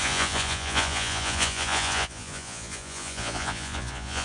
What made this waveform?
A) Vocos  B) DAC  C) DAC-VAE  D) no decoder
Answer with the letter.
A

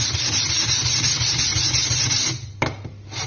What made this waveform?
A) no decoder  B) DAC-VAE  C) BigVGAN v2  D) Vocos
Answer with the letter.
A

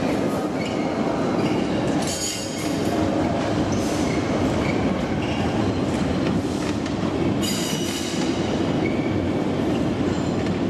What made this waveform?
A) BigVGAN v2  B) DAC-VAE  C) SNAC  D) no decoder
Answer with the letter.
D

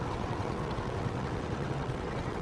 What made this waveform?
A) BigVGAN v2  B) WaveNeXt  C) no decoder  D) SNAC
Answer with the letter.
B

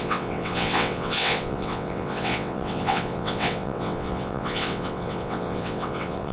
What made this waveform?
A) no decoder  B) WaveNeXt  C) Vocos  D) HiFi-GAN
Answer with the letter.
B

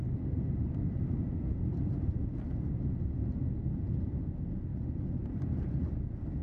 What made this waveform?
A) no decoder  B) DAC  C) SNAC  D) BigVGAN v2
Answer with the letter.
A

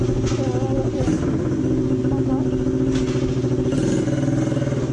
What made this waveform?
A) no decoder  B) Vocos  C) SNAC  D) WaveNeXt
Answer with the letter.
A